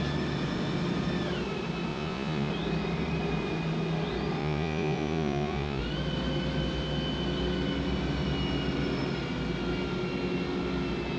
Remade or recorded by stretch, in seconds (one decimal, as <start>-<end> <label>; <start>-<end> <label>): 0.0-1.9 recorded; 1.9-2.5 remade; 2.5-4.4 recorded; 4.4-5.8 remade; 5.8-11.2 recorded